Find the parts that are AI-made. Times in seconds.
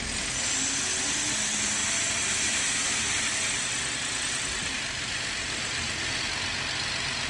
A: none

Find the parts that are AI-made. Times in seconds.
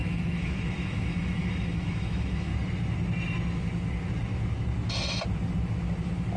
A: 0.0-2.5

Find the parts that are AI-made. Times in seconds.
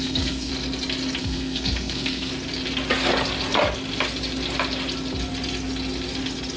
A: 0.0-0.5; 1.2-2.3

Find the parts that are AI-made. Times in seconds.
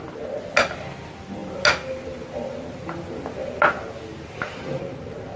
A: none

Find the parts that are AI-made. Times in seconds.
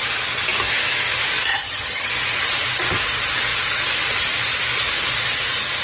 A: 1.5-2.1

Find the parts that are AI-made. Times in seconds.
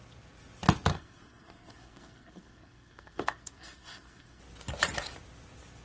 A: 0.9-4.4